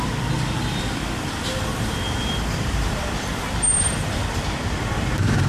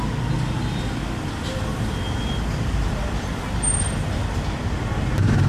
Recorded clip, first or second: second